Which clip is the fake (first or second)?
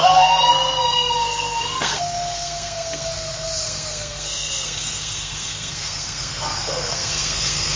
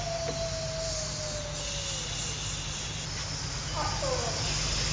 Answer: first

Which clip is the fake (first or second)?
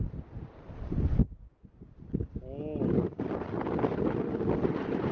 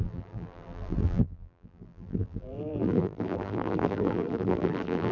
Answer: second